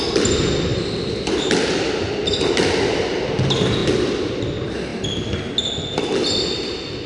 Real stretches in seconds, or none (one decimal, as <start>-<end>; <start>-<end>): 0.0-7.1